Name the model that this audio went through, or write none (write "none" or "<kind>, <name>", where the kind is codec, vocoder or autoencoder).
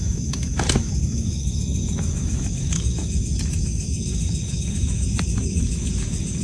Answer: autoencoder, DAC-VAE